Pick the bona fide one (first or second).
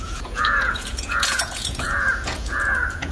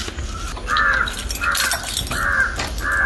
second